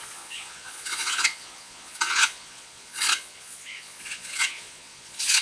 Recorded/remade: remade